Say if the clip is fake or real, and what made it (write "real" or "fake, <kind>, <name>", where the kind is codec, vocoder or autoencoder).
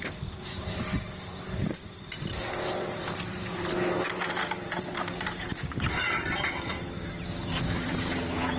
fake, vocoder, BigVGAN v2